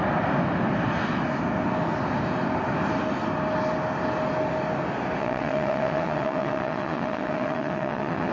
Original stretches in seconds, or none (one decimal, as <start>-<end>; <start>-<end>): 0.0-5.2